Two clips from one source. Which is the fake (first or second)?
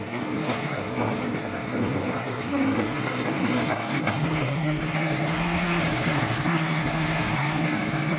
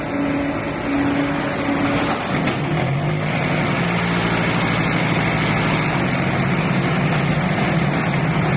first